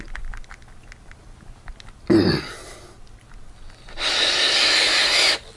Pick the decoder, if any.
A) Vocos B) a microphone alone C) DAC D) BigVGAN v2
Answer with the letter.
B